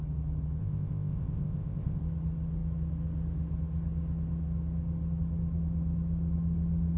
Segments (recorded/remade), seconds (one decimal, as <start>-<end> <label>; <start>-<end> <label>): 0.0-0.6 recorded; 0.6-2.0 remade; 2.0-7.0 recorded